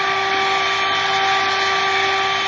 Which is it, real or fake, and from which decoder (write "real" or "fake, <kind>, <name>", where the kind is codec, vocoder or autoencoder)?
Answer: real